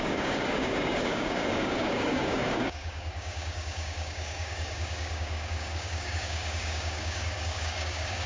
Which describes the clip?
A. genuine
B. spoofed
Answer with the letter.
B